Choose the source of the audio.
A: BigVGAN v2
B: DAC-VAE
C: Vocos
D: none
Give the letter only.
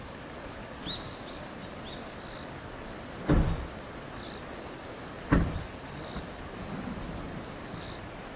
D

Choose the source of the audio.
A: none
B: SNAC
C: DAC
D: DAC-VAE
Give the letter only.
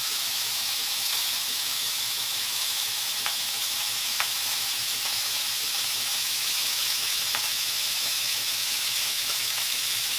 D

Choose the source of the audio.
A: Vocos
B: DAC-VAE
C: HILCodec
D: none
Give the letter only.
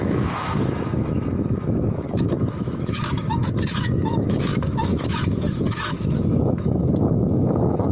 B